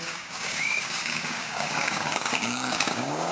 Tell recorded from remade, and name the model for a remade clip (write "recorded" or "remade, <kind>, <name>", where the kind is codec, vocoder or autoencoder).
remade, codec, DAC